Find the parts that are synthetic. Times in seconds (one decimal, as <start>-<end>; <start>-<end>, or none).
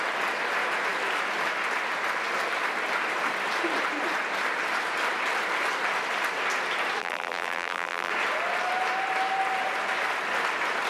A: 7.0-8.1